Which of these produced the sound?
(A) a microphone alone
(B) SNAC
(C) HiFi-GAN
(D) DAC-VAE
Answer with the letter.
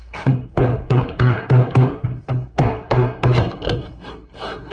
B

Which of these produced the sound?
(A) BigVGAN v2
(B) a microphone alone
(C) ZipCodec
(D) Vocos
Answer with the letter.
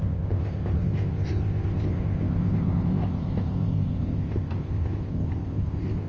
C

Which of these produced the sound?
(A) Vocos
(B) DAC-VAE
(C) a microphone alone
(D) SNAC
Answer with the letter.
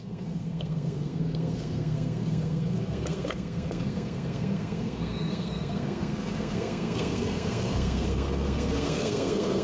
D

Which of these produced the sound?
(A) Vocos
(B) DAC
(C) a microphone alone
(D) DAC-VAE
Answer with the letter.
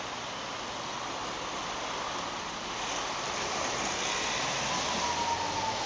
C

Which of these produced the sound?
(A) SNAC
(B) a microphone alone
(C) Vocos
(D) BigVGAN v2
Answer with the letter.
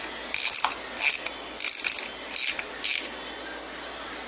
B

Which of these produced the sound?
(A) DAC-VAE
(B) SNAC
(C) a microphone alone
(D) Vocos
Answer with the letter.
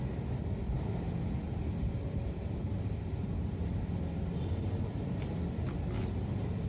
C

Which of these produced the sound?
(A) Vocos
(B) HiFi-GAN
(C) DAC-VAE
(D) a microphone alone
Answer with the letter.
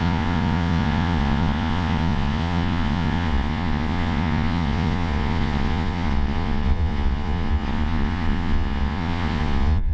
A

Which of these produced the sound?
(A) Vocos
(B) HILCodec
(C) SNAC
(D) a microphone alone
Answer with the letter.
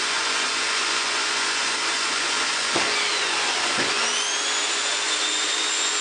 A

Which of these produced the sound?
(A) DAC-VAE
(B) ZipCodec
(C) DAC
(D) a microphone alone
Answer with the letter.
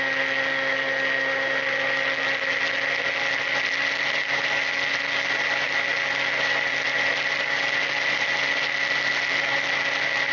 D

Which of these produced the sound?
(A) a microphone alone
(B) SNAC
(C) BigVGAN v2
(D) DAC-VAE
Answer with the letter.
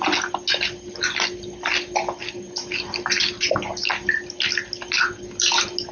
A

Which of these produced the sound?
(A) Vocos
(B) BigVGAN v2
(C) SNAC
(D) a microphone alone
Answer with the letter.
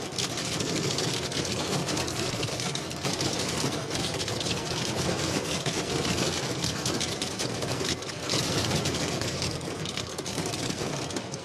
C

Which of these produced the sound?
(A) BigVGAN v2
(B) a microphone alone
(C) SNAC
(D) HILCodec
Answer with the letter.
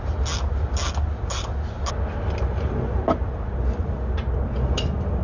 B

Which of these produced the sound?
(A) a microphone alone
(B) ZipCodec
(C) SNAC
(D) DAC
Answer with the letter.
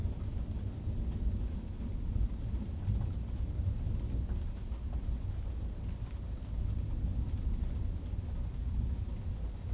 A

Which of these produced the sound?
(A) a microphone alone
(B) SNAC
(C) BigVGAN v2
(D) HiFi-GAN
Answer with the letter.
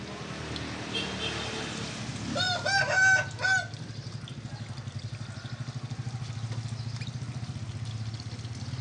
A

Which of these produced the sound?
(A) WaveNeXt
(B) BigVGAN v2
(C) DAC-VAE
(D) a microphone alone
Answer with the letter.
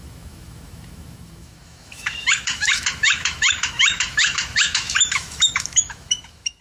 C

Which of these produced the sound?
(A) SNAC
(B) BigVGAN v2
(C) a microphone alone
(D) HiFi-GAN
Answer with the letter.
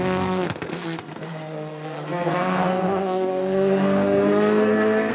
A